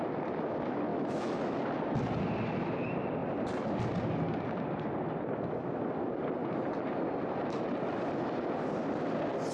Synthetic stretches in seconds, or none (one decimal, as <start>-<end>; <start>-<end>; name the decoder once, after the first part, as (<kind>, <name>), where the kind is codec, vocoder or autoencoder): 0.9-1.6 (autoencoder, DAC-VAE)